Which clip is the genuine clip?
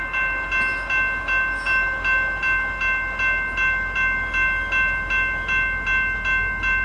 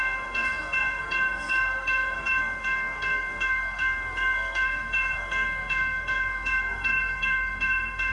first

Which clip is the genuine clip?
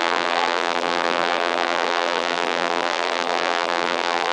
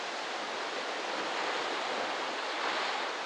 second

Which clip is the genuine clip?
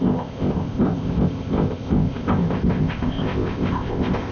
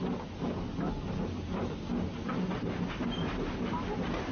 second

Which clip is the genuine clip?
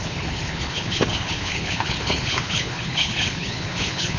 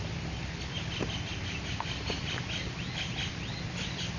second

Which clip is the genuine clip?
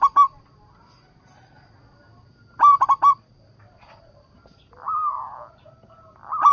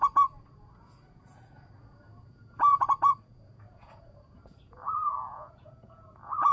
first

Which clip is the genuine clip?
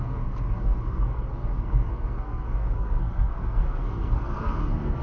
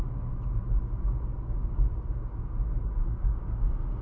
second